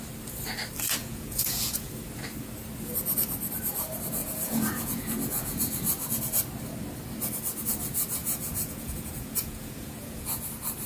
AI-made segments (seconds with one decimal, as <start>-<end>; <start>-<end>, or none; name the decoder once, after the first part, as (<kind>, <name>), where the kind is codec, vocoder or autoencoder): 1.0-1.9 (vocoder, Vocos); 4.2-5.6; 8.2-10.3